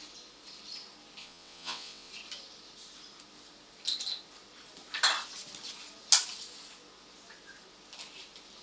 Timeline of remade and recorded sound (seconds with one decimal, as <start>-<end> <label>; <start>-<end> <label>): 0.0-1.2 recorded; 1.2-2.1 remade; 2.1-8.6 recorded